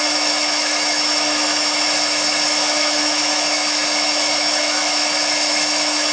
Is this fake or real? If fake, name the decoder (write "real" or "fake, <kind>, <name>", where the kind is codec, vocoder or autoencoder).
fake, autoencoder, DAC-VAE